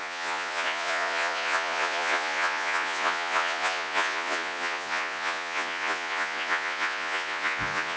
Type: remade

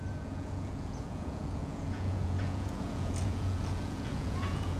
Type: remade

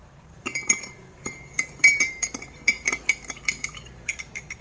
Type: remade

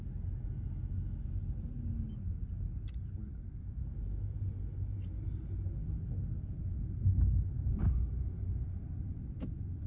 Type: recorded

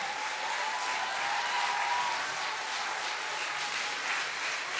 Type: recorded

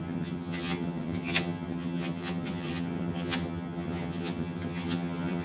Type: remade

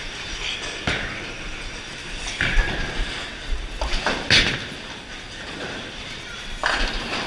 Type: recorded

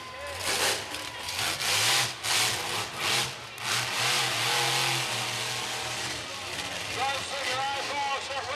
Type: recorded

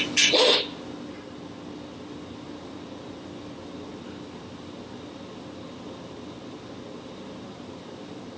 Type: recorded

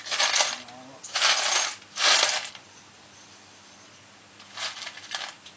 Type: recorded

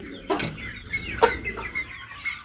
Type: remade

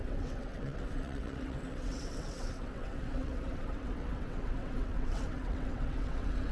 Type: remade